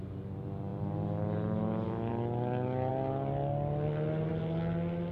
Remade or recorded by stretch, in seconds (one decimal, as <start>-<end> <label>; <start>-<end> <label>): 0.0-5.1 recorded